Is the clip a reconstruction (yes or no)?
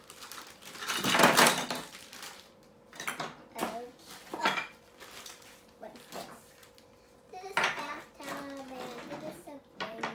no